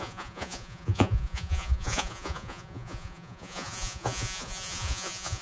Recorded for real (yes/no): no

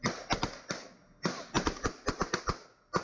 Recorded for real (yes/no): yes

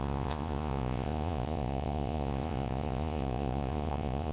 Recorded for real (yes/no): no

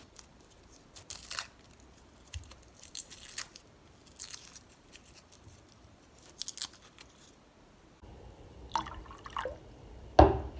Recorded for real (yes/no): yes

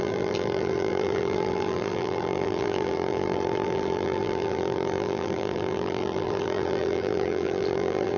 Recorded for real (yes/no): no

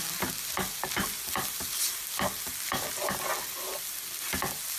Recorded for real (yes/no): yes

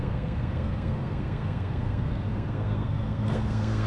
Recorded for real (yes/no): no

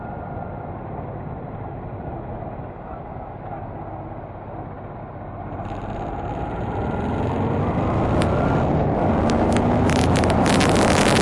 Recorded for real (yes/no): yes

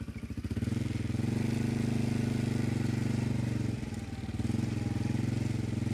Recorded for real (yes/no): yes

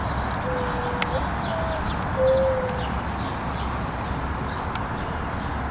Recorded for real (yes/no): yes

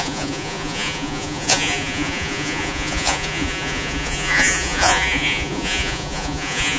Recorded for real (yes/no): no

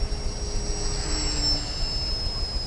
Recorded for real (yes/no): yes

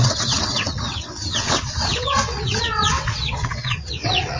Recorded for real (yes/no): no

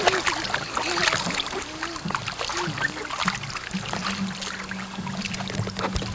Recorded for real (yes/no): yes